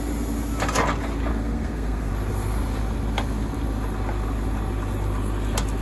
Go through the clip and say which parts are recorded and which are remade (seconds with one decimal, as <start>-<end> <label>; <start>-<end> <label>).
0.0-1.3 recorded; 1.3-2.1 remade; 2.1-5.8 recorded